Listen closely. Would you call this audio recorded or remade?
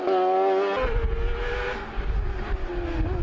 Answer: recorded